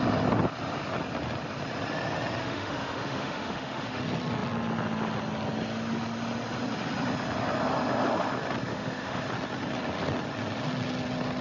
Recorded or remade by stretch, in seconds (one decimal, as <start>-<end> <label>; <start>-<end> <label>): 0.0-2.4 recorded; 2.4-4.0 remade; 4.0-8.7 recorded; 8.7-9.2 remade; 9.2-11.4 recorded